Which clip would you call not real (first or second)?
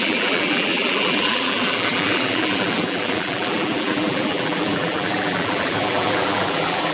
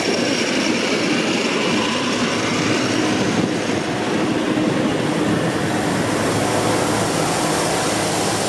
first